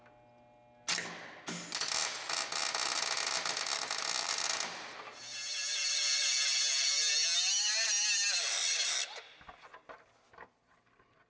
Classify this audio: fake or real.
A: real